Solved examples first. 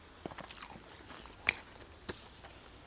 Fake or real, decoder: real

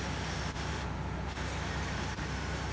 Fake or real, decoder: real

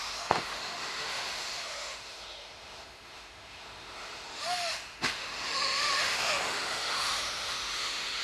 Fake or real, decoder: fake, autoencoder, DAC-VAE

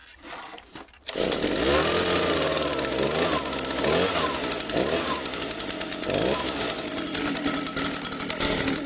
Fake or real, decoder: real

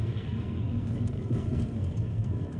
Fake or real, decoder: fake, codec, SNAC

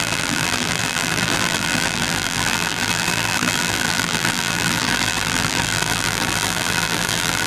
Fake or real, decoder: fake, vocoder, BigVGAN v2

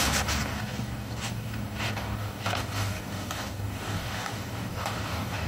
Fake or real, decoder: fake, codec, DAC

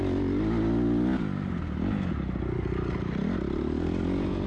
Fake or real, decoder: real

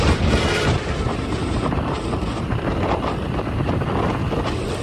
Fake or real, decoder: fake, vocoder, BigVGAN v2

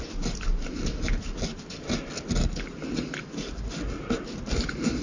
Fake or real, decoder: real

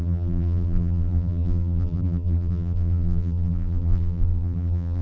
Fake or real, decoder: fake, vocoder, BigVGAN v2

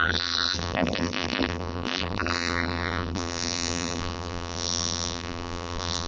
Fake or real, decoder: fake, vocoder, BigVGAN v2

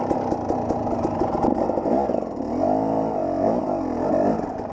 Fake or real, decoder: real